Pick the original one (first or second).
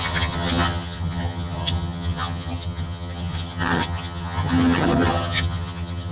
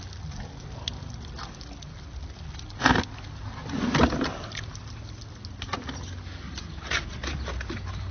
second